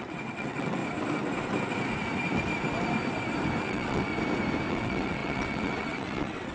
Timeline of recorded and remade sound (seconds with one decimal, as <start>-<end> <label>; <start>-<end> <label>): 0.0-0.8 remade; 0.8-3.6 recorded; 3.6-4.1 remade; 4.1-4.7 recorded; 4.7-6.5 remade